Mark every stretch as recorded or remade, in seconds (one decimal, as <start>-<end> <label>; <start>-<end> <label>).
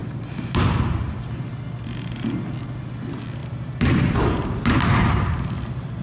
0.0-1.3 remade; 1.3-3.4 recorded; 3.4-5.3 remade; 5.3-6.0 recorded